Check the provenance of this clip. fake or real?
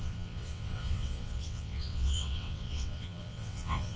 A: fake